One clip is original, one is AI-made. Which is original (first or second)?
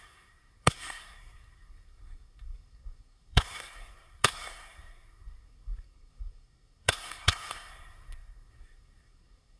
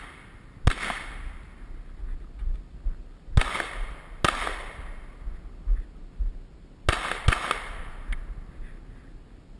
second